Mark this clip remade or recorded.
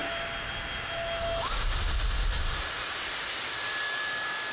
recorded